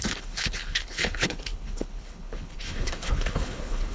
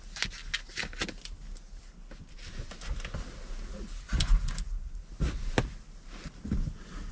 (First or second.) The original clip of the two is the second